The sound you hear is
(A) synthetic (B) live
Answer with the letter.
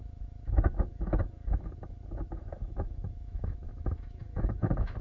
A